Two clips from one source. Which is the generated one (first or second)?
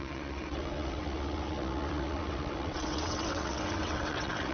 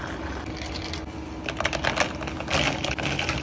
first